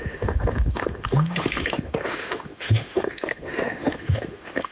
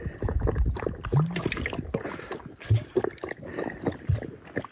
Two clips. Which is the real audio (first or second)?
second